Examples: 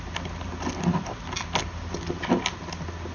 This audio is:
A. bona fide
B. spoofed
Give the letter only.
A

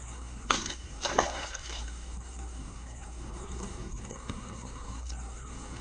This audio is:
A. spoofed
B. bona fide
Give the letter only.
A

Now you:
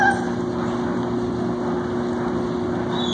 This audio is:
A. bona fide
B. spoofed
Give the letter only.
A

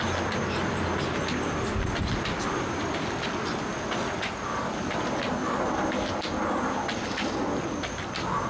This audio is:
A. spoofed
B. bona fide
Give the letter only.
B